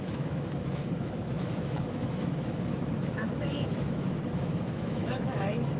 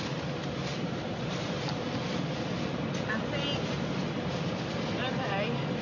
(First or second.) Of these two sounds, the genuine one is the second